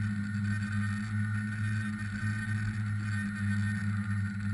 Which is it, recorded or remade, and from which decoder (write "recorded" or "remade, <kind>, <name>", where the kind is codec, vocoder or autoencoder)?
recorded